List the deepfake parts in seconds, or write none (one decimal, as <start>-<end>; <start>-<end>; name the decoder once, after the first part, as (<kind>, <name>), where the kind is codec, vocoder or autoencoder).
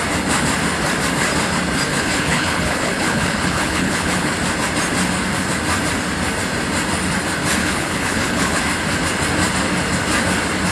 1.9-4.3 (codec, HILCodec); 7.6-8.6